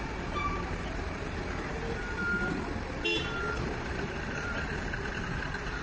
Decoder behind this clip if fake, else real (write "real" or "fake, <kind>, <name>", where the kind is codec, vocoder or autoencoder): fake, vocoder, BigVGAN v2